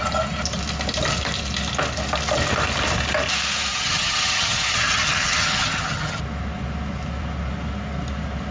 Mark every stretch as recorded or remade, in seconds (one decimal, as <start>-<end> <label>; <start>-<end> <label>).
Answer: 0.0-3.7 recorded; 3.7-6.2 remade; 6.2-8.5 recorded